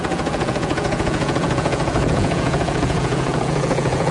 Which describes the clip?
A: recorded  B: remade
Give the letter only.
B